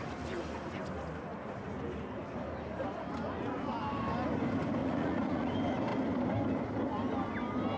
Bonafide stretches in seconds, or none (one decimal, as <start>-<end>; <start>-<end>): 0.0-4.8; 5.5-7.8